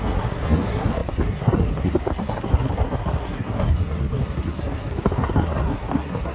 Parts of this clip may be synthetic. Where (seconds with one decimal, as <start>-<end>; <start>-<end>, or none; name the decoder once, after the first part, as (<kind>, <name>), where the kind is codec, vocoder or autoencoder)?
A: 0.0-6.3 (codec, SNAC)